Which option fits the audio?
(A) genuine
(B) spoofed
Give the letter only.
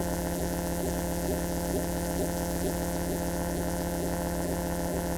B